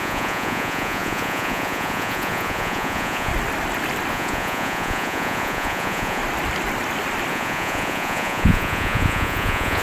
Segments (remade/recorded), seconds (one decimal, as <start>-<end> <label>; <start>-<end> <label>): 0.0-3.3 remade; 3.3-4.1 recorded; 4.1-6.2 remade; 6.2-7.3 recorded; 7.3-9.8 remade